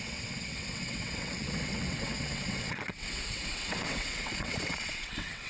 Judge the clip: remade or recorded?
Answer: remade